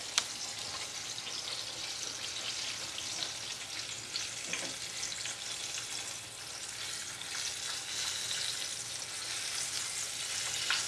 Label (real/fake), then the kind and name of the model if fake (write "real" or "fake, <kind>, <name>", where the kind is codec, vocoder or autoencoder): real